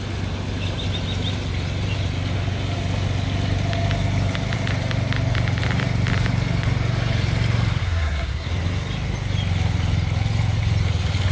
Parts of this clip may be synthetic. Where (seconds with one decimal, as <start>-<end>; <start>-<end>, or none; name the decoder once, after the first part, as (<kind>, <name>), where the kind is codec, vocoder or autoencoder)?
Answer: 7.8-8.5 (codec, SNAC)